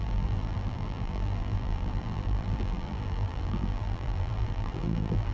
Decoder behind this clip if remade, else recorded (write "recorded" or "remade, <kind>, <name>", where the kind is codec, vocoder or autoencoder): remade, vocoder, BigVGAN v2